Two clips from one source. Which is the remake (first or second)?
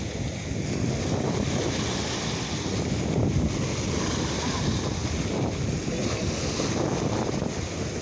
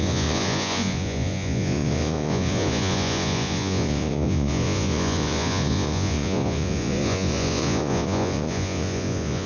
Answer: second